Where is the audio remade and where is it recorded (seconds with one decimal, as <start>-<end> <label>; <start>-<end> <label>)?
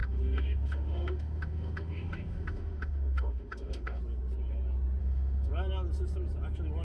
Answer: 0.0-4.0 remade; 4.0-5.0 recorded; 5.0-5.5 remade; 5.5-6.8 recorded